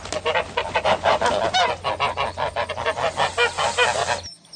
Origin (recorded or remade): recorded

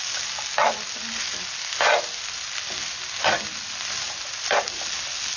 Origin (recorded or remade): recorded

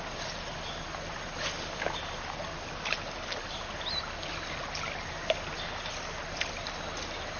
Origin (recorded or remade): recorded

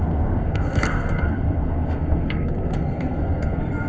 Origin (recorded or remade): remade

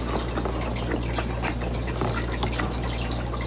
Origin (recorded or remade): recorded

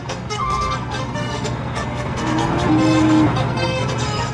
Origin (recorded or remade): remade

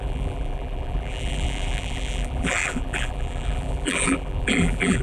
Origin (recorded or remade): remade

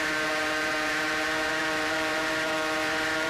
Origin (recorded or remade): remade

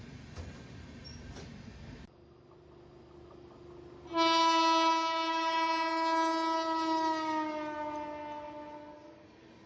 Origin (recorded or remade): recorded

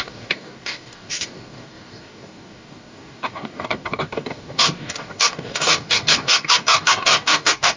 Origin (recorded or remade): remade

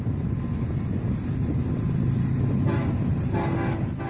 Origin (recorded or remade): recorded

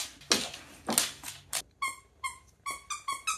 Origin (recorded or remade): recorded